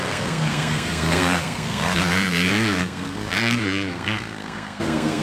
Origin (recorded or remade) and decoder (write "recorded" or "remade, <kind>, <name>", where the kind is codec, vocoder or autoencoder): remade, codec, SNAC